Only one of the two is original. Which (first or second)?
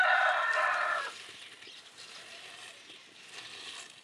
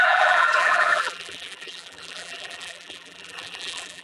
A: first